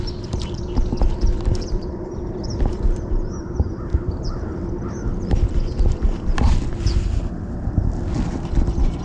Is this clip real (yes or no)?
yes